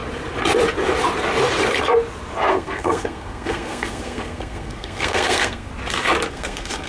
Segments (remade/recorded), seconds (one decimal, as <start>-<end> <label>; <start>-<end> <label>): 0.0-2.5 recorded; 2.5-5.7 remade; 5.7-6.3 recorded; 6.3-6.9 remade